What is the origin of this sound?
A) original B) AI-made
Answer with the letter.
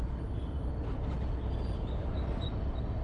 A